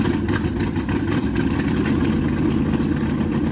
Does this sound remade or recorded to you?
recorded